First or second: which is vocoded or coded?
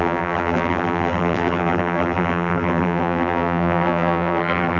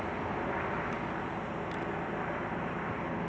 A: first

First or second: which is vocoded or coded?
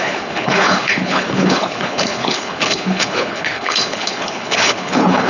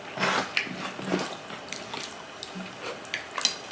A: first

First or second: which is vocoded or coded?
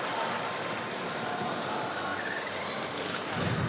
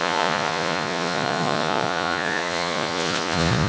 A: second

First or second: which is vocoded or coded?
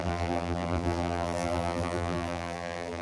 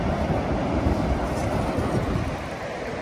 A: first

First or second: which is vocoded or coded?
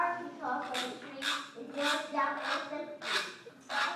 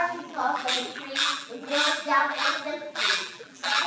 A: second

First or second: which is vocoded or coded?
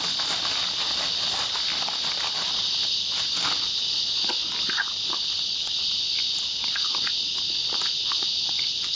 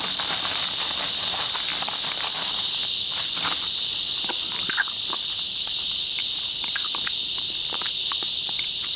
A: second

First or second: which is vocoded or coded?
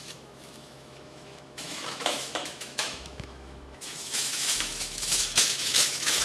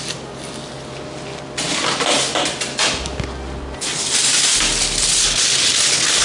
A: first